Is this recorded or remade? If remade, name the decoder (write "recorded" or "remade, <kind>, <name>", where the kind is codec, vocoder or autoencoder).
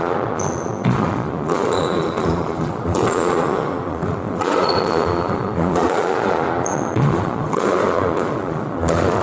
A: remade, vocoder, Vocos